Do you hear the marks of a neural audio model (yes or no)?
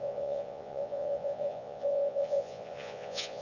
yes